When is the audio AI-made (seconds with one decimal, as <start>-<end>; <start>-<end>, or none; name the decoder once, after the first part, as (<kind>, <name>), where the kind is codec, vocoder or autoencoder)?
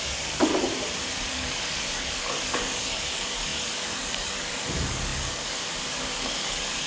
0.0-0.5 (codec, DAC); 1.3-6.9